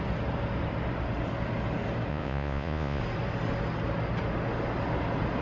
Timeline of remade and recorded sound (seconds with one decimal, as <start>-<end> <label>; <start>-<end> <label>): 0.0-2.1 recorded; 2.1-3.0 remade; 3.0-5.4 recorded